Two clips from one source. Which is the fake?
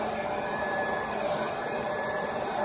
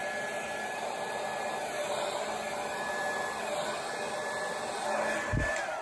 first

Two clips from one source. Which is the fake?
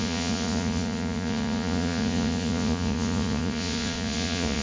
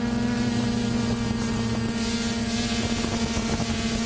first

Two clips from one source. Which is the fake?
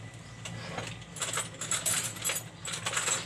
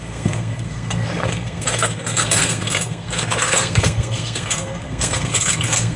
second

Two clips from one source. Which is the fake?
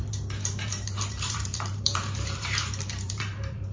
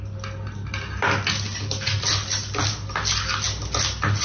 first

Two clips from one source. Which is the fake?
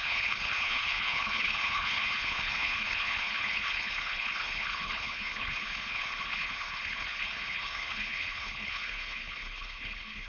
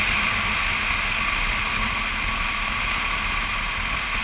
first